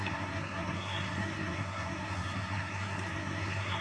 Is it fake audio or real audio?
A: fake